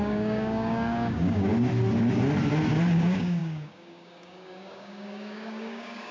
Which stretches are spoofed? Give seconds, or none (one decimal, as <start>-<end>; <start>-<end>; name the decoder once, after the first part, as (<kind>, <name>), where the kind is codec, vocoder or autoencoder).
0.0-1.5 (codec, DAC); 2.9-6.1